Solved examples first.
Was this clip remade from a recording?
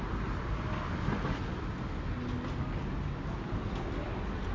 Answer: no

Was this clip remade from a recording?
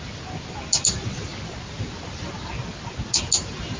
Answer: no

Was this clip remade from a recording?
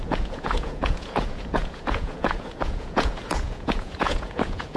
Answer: yes